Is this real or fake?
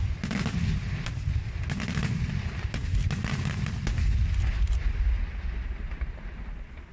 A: real